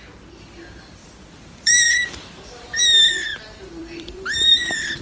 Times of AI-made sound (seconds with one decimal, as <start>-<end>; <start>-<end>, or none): 1.0-2.7; 3.3-5.0